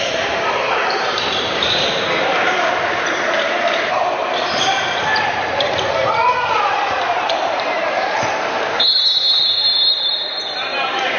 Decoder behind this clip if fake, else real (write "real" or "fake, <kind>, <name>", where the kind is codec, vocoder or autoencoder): fake, vocoder, BigVGAN v2